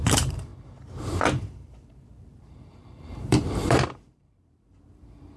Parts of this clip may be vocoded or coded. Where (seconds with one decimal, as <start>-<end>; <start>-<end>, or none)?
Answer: 0.0-0.5; 1.5-5.4